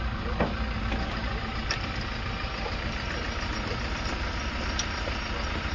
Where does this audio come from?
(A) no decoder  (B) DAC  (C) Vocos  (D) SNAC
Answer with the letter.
A